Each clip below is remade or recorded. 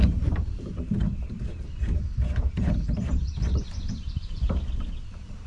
remade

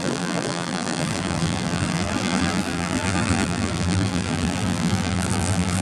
remade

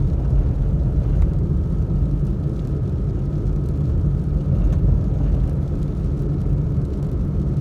recorded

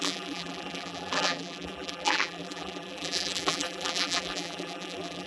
remade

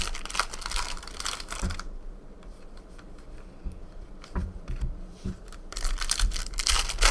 remade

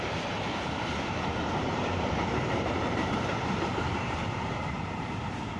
remade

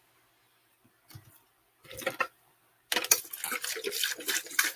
recorded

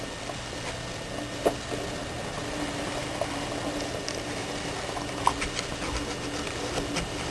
remade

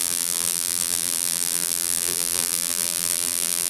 remade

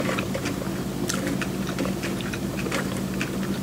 remade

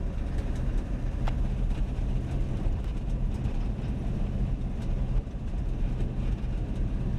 remade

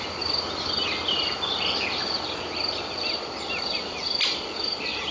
recorded